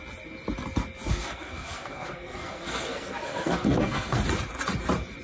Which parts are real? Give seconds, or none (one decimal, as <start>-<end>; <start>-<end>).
0.0-1.1; 4.2-5.2